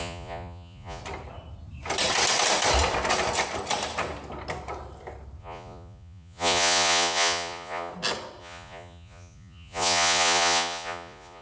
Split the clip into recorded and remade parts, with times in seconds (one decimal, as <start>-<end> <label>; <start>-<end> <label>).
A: 0.0-1.0 remade; 1.0-5.4 recorded; 5.4-7.9 remade; 7.9-8.4 recorded; 8.4-11.4 remade